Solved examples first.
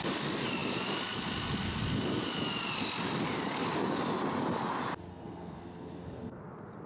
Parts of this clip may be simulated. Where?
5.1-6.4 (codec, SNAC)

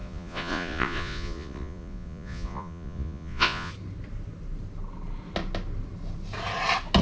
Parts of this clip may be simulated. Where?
0.0-3.7 (vocoder, Vocos)

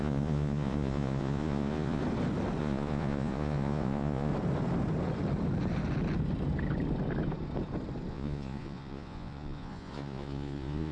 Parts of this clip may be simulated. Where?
0.0-2.0 (vocoder, Vocos); 2.6-4.3; 8.1-10.9

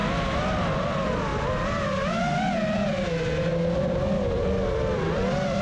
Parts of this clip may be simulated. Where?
0.8-1.3 (vocoder, BigVGAN v2); 4.7-5.6

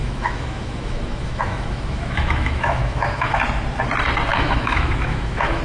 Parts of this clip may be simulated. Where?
0.0-3.4 (autoencoder, DAC-VAE); 4.3-5.6

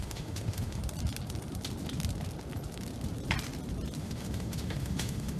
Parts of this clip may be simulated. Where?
0.0-0.8 (autoencoder, DAC-VAE); 4.0-5.4